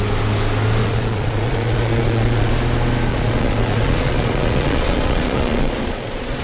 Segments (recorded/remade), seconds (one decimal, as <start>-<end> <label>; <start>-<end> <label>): 0.0-0.8 recorded; 0.8-2.5 remade; 2.5-3.1 recorded; 3.1-6.4 remade